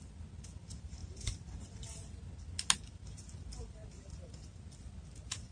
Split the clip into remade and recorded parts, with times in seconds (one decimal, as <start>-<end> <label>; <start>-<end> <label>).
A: 0.0-5.5 recorded